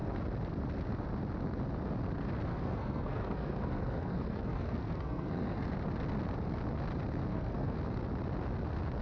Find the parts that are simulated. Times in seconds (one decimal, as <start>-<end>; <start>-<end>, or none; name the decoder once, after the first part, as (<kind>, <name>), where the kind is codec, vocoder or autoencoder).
2.5-5.7 (codec, SNAC); 7.3-7.8